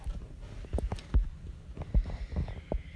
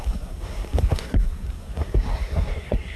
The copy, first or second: second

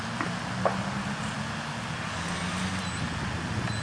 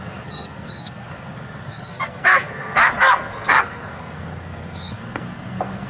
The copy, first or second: second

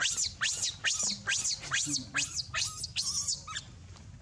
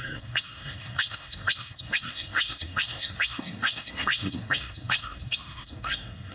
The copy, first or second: second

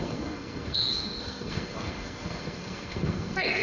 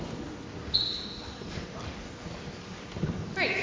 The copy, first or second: first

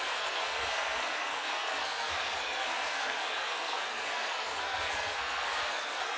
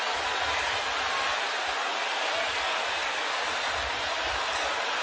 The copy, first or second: first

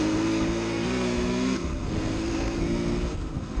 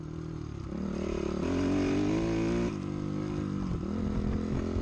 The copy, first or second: first